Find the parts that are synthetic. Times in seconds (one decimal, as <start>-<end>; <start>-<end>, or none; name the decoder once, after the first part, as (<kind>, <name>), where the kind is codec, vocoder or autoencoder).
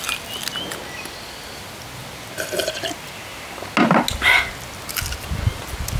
none